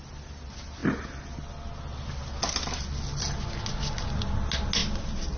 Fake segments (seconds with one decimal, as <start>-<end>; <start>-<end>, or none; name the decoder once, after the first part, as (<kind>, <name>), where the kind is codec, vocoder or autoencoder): none